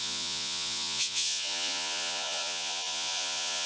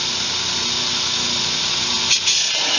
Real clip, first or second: second